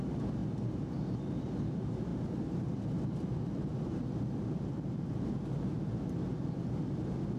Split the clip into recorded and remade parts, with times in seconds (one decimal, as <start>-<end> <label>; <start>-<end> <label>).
0.0-0.4 recorded; 0.4-1.6 remade; 1.6-2.1 recorded; 2.1-5.2 remade; 5.2-7.4 recorded